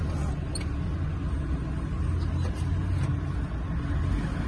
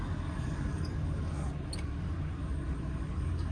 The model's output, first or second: second